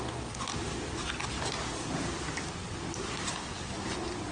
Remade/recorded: recorded